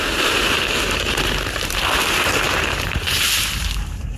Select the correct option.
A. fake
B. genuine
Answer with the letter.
A